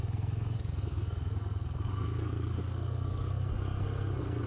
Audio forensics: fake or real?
fake